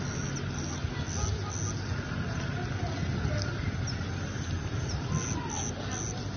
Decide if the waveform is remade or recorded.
recorded